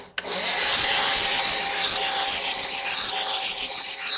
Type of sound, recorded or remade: recorded